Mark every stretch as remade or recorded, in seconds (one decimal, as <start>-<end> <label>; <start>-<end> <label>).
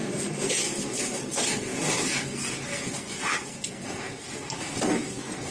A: 0.0-5.5 remade